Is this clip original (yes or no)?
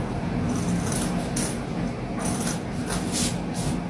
yes